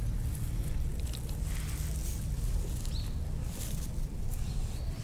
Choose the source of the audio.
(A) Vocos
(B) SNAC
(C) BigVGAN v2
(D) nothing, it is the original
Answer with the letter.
D